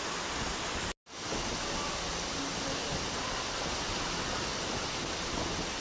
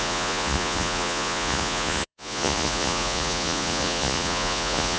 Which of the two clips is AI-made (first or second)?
second